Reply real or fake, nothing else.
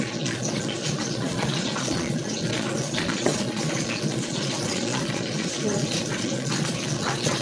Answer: fake